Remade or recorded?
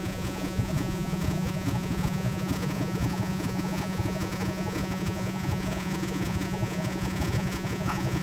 remade